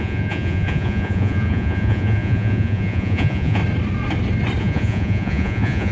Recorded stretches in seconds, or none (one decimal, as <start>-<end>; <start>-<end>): 3.6-4.6